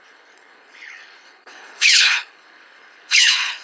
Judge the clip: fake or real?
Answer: fake